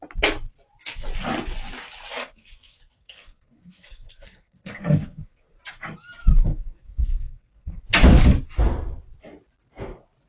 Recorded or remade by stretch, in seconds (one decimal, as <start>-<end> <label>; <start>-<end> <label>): 0.0-2.2 recorded; 2.2-5.6 remade; 5.6-6.5 recorded; 6.5-7.8 remade; 7.8-10.3 recorded